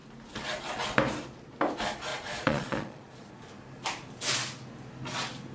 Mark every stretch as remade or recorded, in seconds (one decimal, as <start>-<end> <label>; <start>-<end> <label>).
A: 0.0-2.1 recorded; 2.1-3.3 remade; 3.3-5.5 recorded